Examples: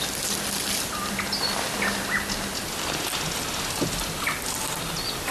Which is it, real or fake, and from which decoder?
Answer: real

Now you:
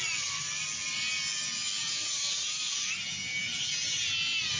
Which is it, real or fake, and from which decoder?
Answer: real